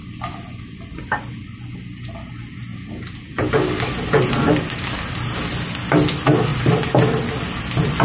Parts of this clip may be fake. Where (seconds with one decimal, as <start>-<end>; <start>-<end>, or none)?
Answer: none